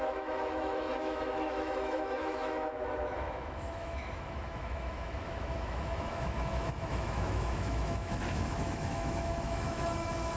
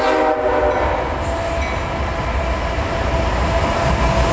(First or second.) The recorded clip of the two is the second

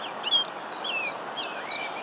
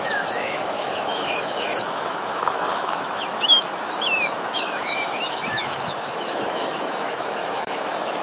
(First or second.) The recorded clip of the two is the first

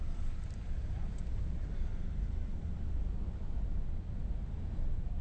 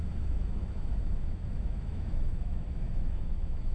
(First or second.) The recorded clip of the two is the first